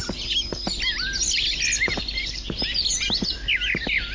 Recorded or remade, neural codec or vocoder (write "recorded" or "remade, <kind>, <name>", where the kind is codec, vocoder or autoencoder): recorded